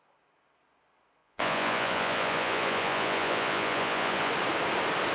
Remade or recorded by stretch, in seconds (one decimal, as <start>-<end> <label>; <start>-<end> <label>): 0.0-1.2 recorded; 1.2-4.3 remade; 4.3-5.1 recorded